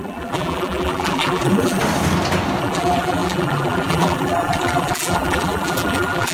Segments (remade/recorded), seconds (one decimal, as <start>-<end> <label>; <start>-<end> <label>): 0.0-1.8 remade; 1.8-2.6 recorded; 2.6-6.3 remade